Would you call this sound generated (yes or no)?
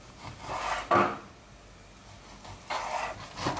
no